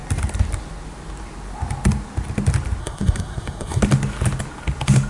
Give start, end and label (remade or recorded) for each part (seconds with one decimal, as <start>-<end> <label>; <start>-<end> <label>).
0.0-2.8 recorded; 2.8-3.8 remade; 3.8-5.1 recorded